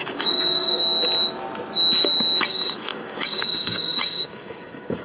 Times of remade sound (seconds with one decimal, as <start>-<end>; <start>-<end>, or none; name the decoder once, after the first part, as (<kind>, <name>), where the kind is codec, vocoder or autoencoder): 0.0-0.8 (codec, DAC); 2.4-5.0